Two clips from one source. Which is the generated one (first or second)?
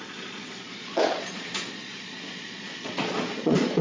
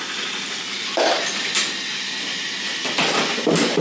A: first